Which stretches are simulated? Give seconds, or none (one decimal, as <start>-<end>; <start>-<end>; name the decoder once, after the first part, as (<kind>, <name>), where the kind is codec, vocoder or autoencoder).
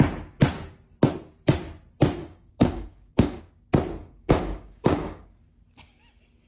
2.2-3.4 (codec, DAC); 4.0-5.2